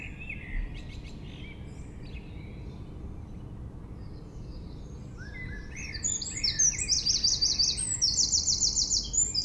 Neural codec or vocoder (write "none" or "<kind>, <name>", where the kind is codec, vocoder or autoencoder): none